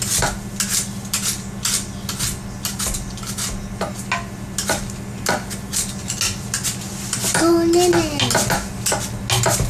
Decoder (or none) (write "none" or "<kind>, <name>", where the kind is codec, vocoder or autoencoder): none